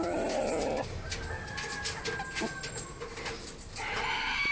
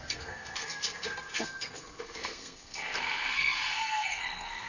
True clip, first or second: first